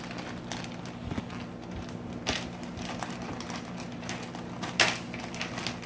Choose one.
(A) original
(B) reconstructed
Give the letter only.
A